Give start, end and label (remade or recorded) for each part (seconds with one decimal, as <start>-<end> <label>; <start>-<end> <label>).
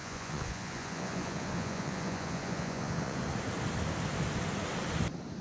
0.0-3.2 remade; 3.2-5.4 recorded